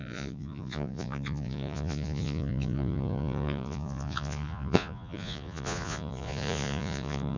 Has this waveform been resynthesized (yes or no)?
yes